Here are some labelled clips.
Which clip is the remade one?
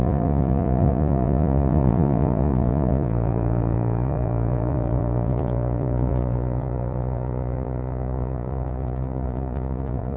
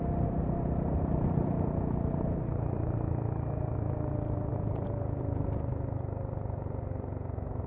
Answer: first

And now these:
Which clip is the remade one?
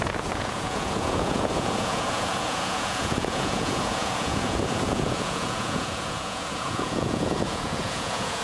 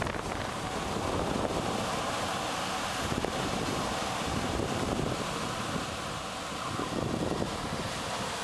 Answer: first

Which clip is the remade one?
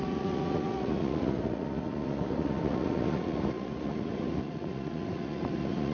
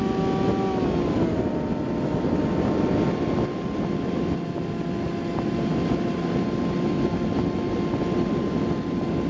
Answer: first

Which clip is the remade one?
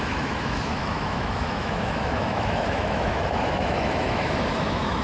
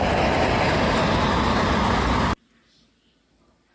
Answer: first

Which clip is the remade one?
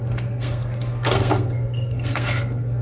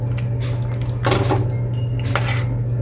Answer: first